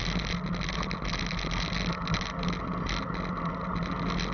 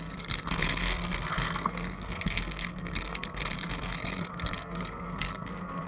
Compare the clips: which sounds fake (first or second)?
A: second